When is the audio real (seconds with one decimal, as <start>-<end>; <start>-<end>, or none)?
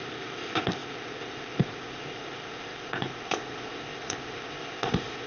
none